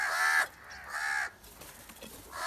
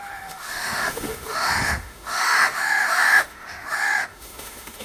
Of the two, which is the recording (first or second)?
first